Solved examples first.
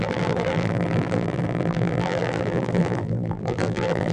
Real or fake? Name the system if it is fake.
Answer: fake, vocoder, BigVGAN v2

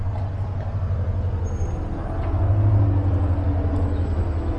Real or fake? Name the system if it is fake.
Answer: real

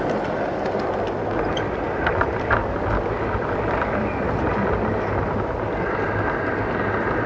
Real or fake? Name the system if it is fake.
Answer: real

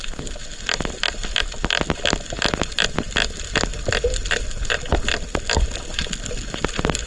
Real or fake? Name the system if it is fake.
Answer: real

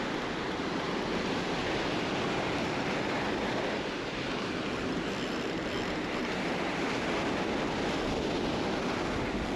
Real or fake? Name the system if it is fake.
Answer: real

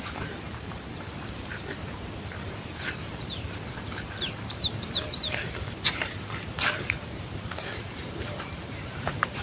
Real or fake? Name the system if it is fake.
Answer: fake, vocoder, BigVGAN v2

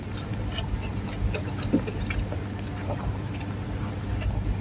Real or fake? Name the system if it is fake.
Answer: fake, vocoder, BigVGAN v2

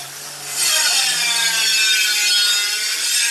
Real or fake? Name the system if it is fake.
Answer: real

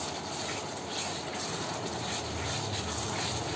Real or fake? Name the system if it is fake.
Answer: real